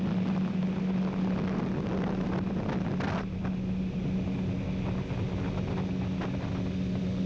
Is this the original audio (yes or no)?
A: yes